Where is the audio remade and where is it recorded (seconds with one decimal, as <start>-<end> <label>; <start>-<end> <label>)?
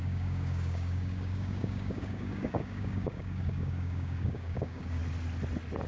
0.0-5.0 remade; 5.0-5.9 recorded